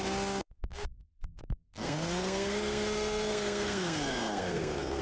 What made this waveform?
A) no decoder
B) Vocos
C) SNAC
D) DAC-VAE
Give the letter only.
C